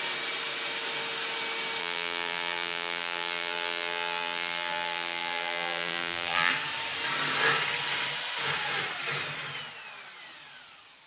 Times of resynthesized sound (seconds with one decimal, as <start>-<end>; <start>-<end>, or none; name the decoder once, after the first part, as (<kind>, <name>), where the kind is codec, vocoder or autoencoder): 1.8-6.5 (vocoder, BigVGAN v2)

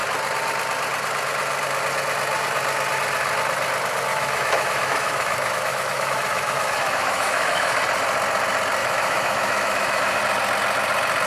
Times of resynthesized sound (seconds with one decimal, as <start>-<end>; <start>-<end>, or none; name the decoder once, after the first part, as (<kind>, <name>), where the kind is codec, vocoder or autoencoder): 4.1-7.8 (autoencoder, DAC-VAE); 8.8-10.2

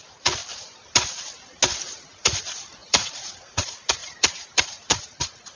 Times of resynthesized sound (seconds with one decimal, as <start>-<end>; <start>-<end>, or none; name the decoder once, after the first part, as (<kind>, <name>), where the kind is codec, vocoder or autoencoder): 0.0-0.4 (vocoder, Vocos); 1.8-5.6

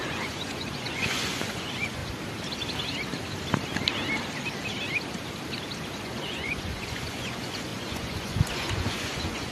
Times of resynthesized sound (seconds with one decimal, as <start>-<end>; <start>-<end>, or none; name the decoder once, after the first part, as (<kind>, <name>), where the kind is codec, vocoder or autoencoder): 0.0-2.0 (vocoder, Vocos); 6.0-9.5

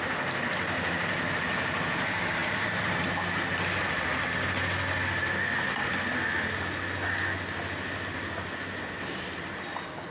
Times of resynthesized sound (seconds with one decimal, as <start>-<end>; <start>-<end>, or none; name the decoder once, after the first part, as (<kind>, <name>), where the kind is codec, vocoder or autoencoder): none